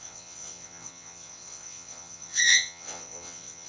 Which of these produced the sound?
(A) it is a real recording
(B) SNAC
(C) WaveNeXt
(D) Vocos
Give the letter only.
C